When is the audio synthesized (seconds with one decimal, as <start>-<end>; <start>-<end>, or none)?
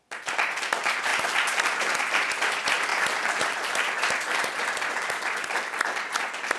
none